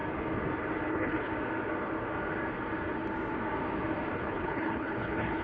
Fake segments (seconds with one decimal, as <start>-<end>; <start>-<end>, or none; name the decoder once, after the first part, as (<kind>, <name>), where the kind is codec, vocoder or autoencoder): 0.9-1.3 (codec, HILCodec); 4.1-5.4